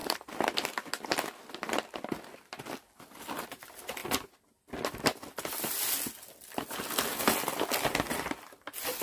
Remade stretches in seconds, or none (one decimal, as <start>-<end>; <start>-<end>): none